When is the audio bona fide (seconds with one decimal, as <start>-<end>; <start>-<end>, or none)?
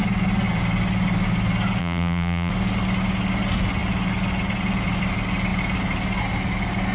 0.0-1.8; 2.5-6.9